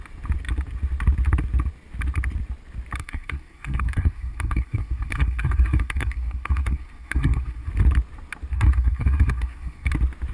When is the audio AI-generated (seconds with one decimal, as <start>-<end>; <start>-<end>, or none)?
3.0-7.7; 8.5-9.9